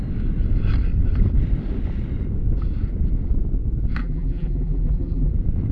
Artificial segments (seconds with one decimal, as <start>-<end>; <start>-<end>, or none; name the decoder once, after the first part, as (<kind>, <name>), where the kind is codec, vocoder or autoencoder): 4.0-5.3 (vocoder, BigVGAN v2)